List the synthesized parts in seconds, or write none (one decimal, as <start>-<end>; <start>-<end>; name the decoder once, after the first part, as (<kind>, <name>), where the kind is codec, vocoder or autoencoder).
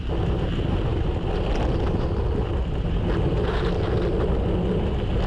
none